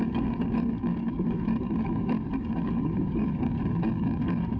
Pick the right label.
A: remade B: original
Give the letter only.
A